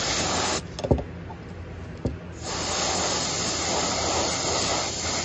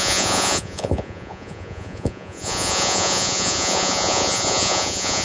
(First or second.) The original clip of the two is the first